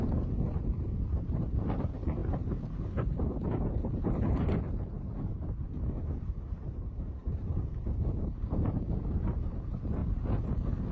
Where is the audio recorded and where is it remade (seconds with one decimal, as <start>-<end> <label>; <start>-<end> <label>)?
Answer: 0.0-10.0 remade; 10.0-10.9 recorded